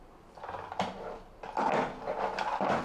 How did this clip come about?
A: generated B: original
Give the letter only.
B